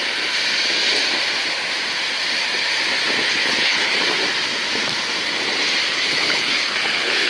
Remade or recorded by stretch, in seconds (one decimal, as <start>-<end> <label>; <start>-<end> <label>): 0.0-3.3 recorded; 3.3-4.0 remade; 4.0-5.9 recorded; 5.9-7.3 remade